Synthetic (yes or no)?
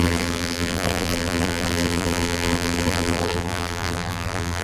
yes